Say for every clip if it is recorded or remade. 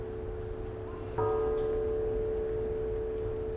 recorded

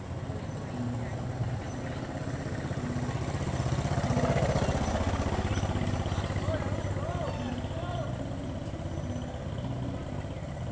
recorded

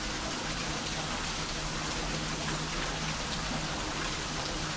recorded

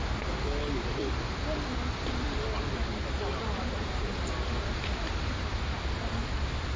recorded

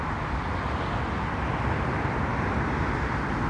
recorded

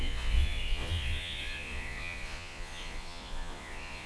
remade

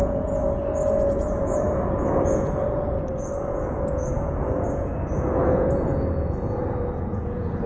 remade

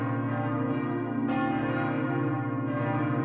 recorded